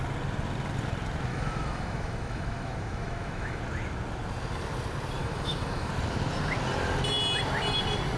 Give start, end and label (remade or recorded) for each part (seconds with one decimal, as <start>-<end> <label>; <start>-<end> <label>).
0.0-1.3 recorded; 1.3-3.6 remade; 3.6-5.2 recorded; 5.2-5.9 remade; 5.9-8.2 recorded